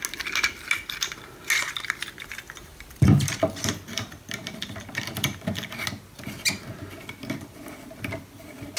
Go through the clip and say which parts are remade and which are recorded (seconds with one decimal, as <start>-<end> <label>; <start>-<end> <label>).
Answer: 0.0-2.7 recorded; 2.7-3.3 remade; 3.3-8.8 recorded

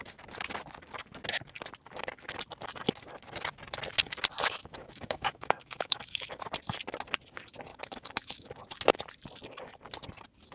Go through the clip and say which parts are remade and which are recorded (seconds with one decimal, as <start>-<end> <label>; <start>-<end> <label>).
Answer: 0.0-4.6 recorded; 4.6-6.4 remade; 6.4-7.7 recorded; 7.7-8.5 remade; 8.5-10.5 recorded